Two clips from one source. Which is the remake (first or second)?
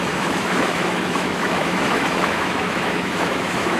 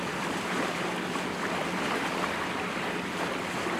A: first